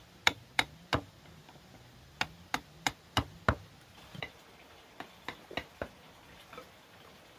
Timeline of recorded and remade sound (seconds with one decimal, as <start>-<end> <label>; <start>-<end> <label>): 0.0-7.4 recorded